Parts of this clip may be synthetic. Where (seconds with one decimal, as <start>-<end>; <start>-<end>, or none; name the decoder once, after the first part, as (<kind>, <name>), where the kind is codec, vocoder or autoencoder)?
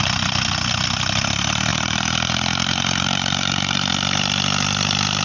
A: 1.7-3.9 (vocoder, BigVGAN v2)